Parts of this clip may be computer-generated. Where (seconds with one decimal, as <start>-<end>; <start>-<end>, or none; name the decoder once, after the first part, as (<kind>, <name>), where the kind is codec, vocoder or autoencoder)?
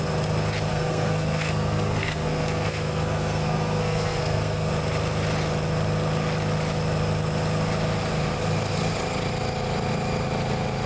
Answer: 0.7-4.7 (codec, SNAC)